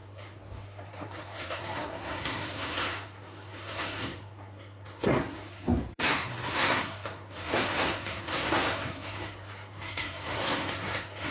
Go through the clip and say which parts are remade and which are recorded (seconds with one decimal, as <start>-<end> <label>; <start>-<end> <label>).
0.0-11.3 remade